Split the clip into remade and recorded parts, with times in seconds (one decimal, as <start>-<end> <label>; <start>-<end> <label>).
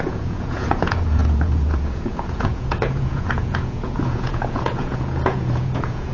0.0-6.1 remade